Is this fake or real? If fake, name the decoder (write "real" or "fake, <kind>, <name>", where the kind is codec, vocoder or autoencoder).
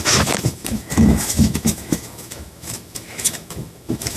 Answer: fake, autoencoder, DAC-VAE